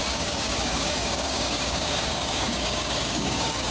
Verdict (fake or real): fake